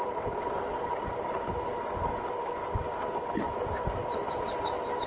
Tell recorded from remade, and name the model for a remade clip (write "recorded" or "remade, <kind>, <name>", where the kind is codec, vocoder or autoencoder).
recorded